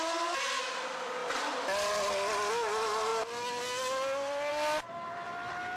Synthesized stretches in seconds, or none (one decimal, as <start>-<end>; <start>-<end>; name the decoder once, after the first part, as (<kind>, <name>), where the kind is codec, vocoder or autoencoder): none